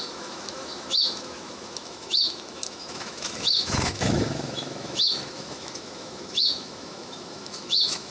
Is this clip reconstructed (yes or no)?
yes